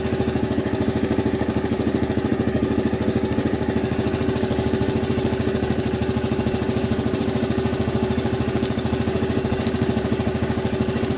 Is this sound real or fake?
fake